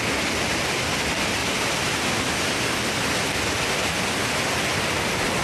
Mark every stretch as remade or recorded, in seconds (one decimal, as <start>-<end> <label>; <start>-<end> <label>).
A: 0.0-5.4 recorded